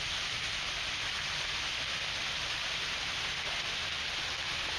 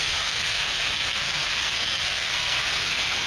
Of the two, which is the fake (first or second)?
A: second